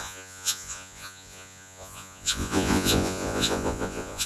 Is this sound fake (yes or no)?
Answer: yes